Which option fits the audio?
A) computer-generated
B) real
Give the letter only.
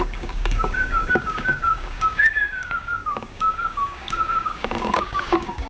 A